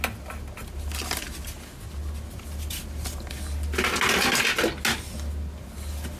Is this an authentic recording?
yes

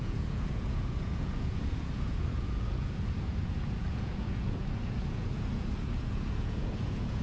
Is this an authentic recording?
no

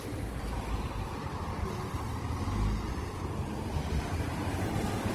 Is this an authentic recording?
yes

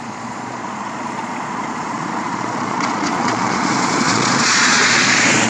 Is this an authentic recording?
no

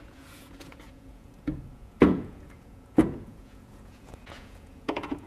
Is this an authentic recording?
no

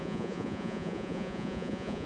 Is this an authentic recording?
no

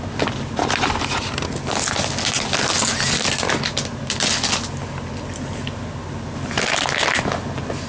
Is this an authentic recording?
yes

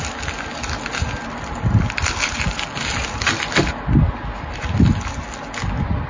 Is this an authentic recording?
yes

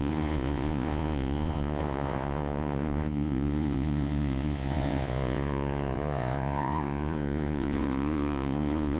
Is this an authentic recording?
no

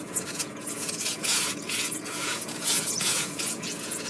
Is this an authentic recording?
no